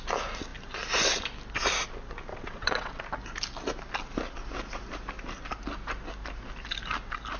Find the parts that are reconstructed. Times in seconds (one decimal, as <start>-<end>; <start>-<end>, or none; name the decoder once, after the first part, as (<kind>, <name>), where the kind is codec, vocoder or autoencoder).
2.3-3.0 (vocoder, WaveNeXt)